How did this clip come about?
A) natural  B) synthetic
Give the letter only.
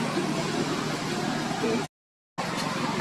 A